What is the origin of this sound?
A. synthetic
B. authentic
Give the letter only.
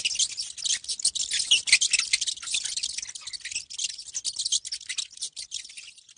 B